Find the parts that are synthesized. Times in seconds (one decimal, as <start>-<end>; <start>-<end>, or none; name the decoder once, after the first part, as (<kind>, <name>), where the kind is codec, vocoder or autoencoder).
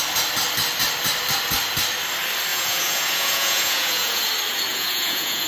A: 2.5-4.2 (vocoder, Vocos); 4.7-5.5